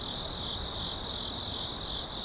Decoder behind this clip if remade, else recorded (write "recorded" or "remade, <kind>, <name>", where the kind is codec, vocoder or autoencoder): recorded